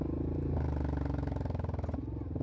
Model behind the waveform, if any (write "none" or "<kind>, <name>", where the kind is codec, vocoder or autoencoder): none